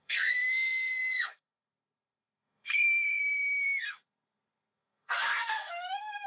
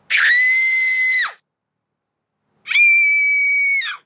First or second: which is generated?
first